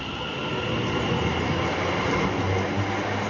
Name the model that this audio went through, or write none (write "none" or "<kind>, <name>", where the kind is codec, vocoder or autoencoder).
none